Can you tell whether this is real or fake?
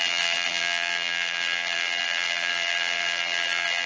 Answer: fake